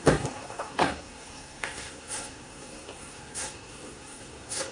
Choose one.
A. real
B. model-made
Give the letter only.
B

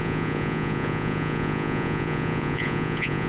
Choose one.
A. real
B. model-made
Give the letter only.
B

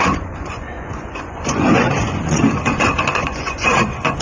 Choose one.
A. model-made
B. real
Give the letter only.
A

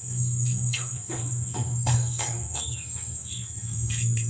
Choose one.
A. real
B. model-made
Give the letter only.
B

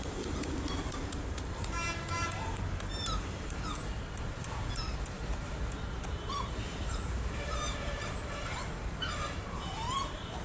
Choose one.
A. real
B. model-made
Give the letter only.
B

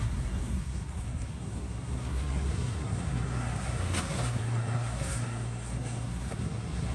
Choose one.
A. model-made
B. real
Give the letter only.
A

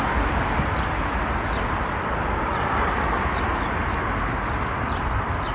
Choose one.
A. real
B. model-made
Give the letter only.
A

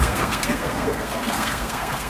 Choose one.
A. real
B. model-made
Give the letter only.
B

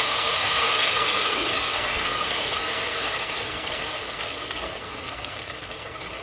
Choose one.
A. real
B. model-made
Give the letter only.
B